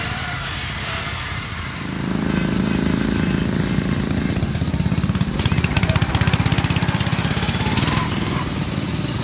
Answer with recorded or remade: recorded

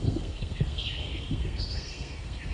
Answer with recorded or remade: remade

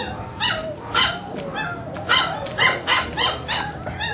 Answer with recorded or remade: recorded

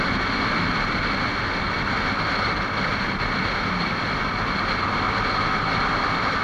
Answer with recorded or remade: recorded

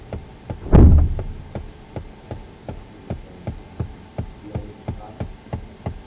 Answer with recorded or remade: recorded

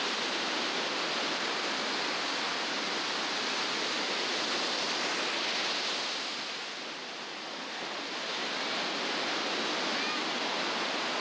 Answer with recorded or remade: recorded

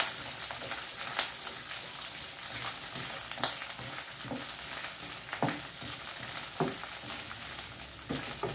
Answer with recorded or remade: recorded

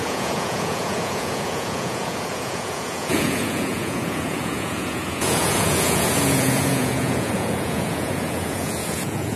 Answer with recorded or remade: remade